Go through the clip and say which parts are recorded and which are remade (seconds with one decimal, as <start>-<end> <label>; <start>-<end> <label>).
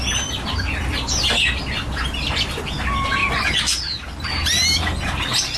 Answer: 0.0-5.6 recorded